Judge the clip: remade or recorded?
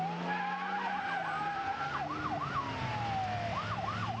recorded